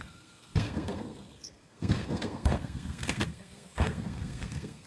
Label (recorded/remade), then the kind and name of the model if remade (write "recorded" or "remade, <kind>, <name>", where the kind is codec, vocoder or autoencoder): remade, codec, SNAC